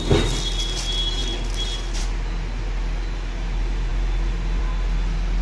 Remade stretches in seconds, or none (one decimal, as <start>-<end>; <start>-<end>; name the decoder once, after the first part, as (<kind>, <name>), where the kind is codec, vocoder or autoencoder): none